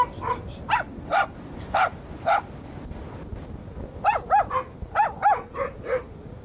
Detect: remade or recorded recorded